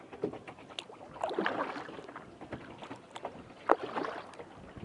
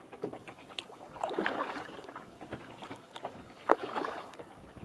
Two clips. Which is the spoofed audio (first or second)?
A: second